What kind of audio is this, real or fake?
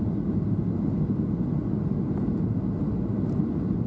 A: real